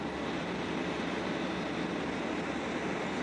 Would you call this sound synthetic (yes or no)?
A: no